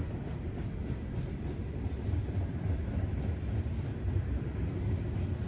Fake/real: real